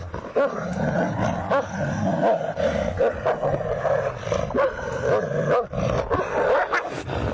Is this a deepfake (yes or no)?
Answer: no